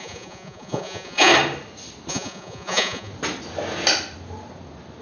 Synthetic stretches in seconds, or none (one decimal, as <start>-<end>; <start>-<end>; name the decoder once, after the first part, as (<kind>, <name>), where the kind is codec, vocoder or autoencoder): 0.0-1.3 (vocoder, Vocos); 2.1-3.1

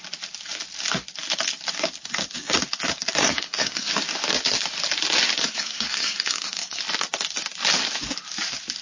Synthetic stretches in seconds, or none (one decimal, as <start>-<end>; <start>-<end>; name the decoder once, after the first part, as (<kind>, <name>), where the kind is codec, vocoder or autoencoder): 3.2-3.9 (codec, SNAC); 5.4-6.8

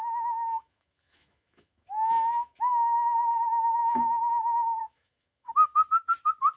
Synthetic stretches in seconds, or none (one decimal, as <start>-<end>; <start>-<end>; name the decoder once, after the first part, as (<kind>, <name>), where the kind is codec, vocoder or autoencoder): 0.0-5.7 (autoencoder, DAC-VAE)

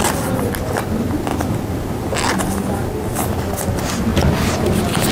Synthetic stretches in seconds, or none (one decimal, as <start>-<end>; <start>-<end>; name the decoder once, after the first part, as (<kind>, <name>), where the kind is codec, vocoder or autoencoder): none

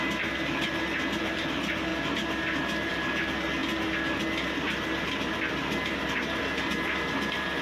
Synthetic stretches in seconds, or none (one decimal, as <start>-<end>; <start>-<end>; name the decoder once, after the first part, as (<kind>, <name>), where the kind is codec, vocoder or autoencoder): none

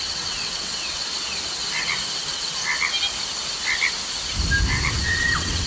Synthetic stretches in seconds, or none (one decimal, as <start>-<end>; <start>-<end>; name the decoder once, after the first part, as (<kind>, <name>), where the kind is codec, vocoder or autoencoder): 0.0-1.1 (vocoder, WaveNeXt); 2.2-2.6; 4.9-5.7

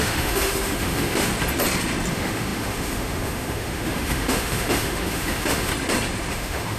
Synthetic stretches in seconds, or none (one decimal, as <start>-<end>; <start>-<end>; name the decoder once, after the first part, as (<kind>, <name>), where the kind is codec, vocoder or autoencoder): 0.0-1.3 (autoencoder, DAC-VAE); 2.1-5.7; 6.3-6.8